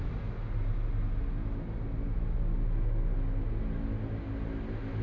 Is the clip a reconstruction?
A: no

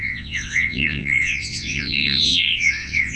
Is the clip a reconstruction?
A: yes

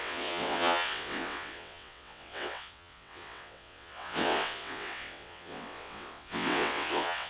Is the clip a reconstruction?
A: yes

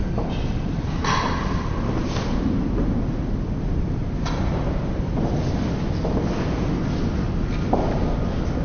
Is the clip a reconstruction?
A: no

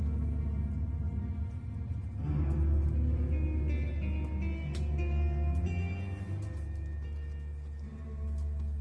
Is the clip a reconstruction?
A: no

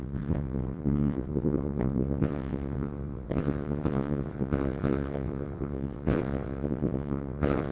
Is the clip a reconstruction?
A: yes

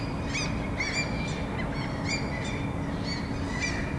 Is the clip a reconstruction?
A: no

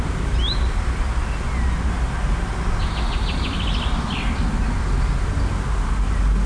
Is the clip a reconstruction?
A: no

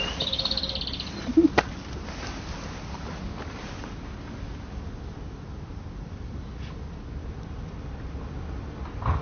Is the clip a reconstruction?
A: no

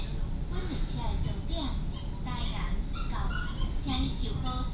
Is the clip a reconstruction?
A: no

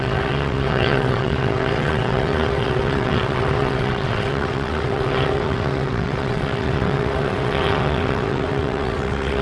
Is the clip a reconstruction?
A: yes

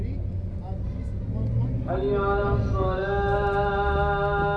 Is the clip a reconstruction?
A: no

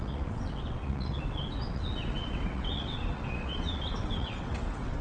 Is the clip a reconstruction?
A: yes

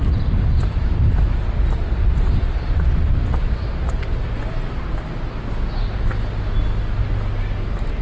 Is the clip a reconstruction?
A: no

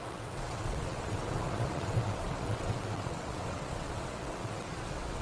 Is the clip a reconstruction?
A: yes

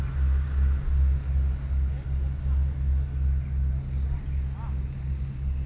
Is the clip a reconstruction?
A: no